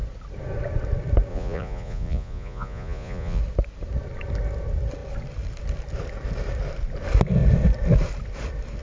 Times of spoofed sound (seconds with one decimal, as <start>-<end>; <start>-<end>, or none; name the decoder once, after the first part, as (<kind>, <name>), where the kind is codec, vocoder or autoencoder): 1.3-3.4 (vocoder, Vocos)